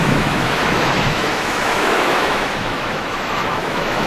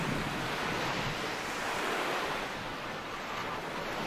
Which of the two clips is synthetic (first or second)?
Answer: first